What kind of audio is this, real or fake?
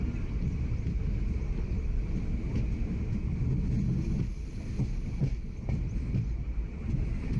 real